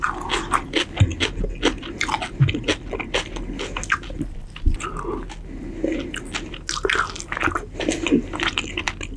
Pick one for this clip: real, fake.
real